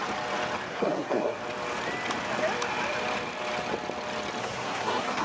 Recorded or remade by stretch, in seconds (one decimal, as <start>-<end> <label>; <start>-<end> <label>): 0.0-0.7 recorded; 0.7-1.4 remade; 1.4-4.4 recorded; 4.4-5.2 remade